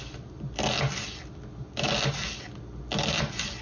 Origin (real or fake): real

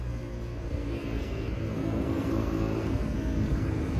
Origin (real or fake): fake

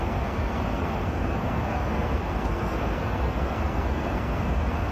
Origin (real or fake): fake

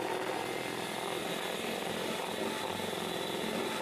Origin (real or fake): real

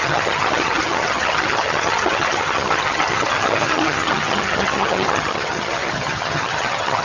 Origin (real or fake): fake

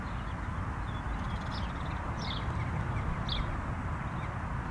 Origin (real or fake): real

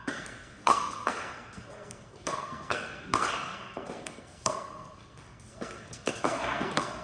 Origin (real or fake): fake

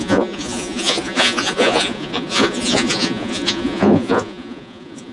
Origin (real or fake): fake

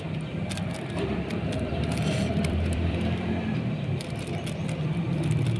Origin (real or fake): fake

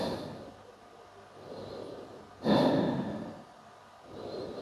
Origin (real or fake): real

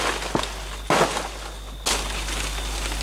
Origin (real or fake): real